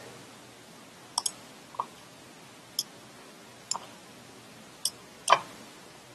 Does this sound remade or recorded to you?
recorded